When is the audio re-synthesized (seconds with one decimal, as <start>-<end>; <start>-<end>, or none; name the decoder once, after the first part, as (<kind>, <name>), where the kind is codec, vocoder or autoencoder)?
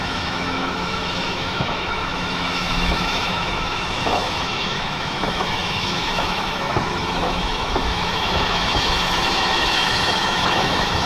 0.0-11.1 (autoencoder, DAC-VAE)